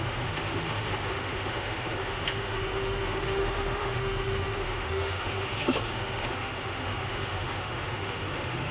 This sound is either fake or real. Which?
fake